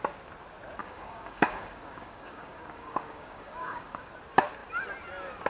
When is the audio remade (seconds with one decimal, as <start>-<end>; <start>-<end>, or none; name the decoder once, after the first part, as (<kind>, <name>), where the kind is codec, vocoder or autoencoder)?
0.8-4.1 (codec, DAC)